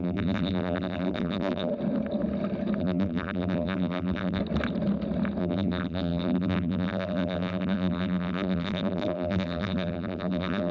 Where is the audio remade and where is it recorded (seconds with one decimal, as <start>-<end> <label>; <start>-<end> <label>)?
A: 0.0-1.7 remade; 1.7-2.8 recorded; 2.8-4.4 remade; 4.4-5.4 recorded; 5.4-10.7 remade